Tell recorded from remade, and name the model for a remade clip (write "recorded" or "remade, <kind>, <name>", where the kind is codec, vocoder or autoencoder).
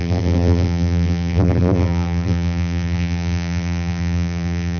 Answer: remade, vocoder, BigVGAN v2